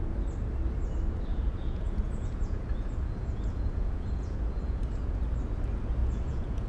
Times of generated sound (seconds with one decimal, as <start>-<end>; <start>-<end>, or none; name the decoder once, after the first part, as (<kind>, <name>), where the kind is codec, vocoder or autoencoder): 1.3-5.2 (vocoder, Vocos); 6.0-6.7